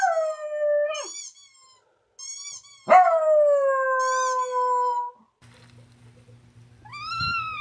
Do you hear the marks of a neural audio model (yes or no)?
no